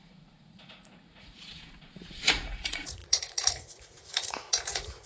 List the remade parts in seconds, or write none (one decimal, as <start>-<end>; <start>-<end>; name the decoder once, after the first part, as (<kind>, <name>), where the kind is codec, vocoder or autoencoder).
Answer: 0.0-5.1 (vocoder, Vocos)